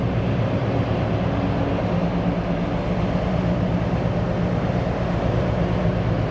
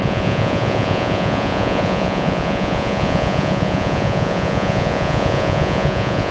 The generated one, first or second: second